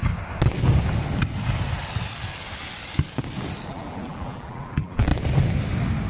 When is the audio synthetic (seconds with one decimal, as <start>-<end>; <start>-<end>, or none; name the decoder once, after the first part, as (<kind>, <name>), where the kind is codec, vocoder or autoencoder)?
3.7-5.1 (vocoder, BigVGAN v2)